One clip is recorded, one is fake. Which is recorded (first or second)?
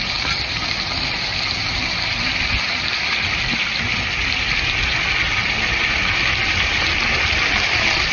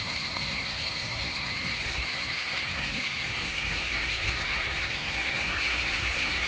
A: first